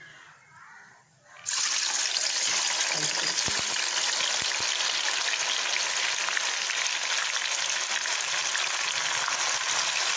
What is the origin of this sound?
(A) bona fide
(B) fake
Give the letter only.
A